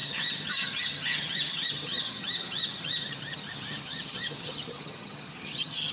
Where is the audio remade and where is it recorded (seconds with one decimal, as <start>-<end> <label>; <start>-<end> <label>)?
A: 0.0-5.9 remade